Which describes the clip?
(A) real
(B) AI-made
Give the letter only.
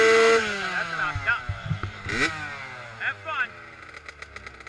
A